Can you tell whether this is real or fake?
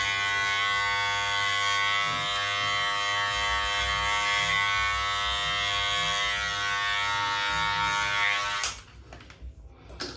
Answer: real